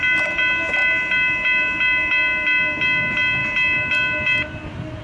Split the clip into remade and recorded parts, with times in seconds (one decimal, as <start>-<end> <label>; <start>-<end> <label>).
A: 0.0-5.0 recorded